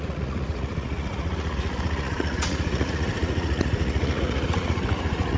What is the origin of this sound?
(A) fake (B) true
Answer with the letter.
A